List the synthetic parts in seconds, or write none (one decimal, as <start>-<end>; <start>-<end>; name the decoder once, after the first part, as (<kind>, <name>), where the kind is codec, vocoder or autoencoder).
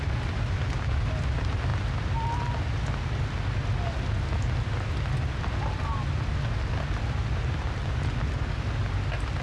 none